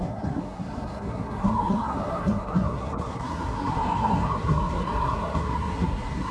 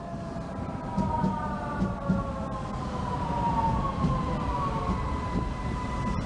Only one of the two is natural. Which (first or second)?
second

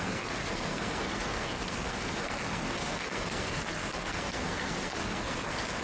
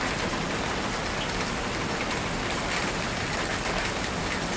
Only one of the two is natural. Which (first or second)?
second